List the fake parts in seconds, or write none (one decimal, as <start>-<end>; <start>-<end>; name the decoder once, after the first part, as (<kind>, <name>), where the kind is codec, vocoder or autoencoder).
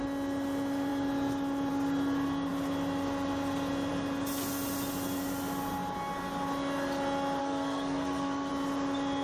7.4-8.5 (codec, SNAC)